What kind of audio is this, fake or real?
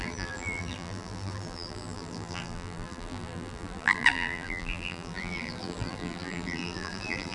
fake